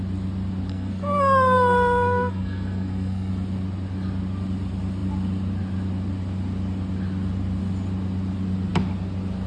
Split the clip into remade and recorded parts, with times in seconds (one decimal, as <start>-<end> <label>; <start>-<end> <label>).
0.0-0.7 recorded; 0.7-3.3 remade; 3.3-9.5 recorded